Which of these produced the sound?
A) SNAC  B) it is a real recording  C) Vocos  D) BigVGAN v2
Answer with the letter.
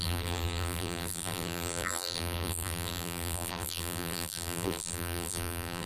D